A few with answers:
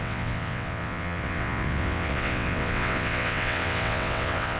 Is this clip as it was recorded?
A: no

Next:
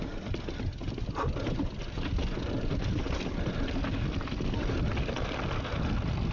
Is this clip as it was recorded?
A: yes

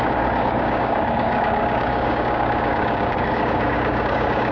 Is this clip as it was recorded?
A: no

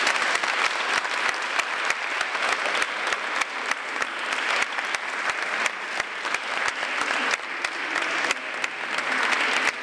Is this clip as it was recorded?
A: yes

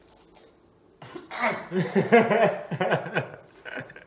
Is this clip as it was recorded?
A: yes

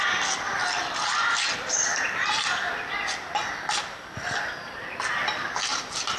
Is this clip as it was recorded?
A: yes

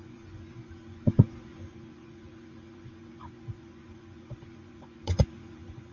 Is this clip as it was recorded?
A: no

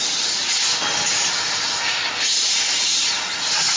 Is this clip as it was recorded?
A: yes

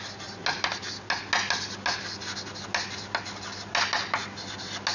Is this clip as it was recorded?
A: yes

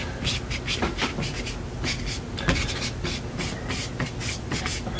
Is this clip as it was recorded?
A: yes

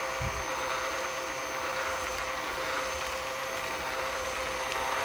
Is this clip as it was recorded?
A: yes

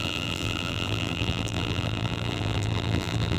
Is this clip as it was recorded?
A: no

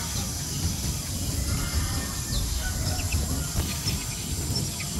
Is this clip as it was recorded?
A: yes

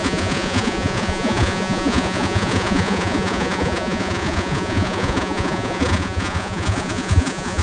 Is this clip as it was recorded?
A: no